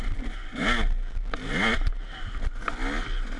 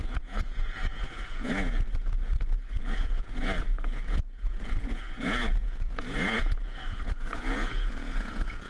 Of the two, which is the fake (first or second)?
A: second